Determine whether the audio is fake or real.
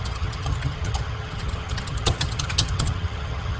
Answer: fake